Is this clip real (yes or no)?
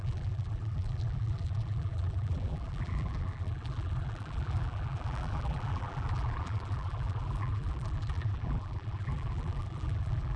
no